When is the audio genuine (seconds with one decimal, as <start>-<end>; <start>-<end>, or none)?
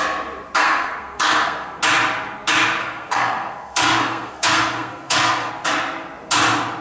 0.0-0.6; 1.8-2.8; 5.5-6.8